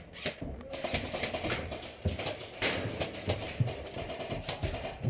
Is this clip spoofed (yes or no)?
no